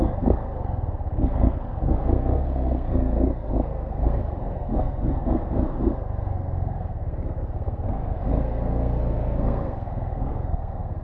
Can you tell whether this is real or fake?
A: fake